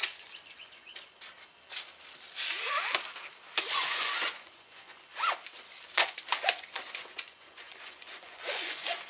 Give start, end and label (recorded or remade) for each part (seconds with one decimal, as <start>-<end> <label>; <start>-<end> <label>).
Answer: 0.0-0.9 remade; 0.9-3.7 recorded; 3.7-5.1 remade; 5.1-5.9 recorded; 5.9-9.1 remade